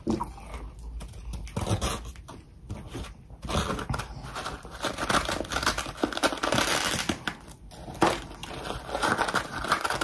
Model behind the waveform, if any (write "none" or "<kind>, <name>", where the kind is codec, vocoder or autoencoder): none